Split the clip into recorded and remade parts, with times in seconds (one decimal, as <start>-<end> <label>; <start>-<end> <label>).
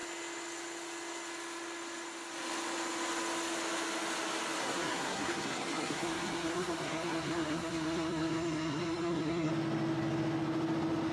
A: 0.0-4.6 recorded; 4.6-9.5 remade; 9.5-11.1 recorded